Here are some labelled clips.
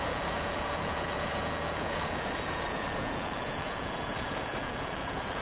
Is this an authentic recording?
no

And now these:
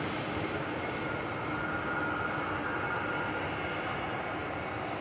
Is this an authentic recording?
yes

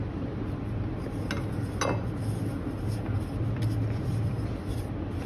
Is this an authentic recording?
yes